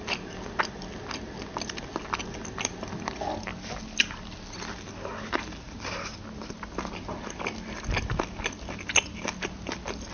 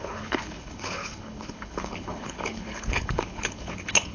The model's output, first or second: second